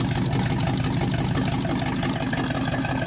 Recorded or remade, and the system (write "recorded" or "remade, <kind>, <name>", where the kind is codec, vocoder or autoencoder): recorded